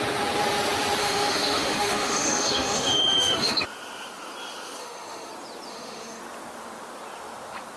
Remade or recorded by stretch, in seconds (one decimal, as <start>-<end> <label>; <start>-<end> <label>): 0.0-1.0 recorded; 1.0-3.6 remade; 3.6-4.8 recorded; 4.8-5.3 remade; 5.3-5.7 recorded; 5.7-6.2 remade; 6.2-7.8 recorded